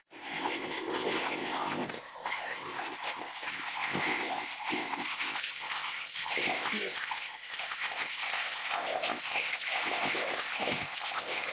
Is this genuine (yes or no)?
no